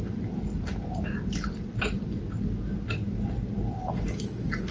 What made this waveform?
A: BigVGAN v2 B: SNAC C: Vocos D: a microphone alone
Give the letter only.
D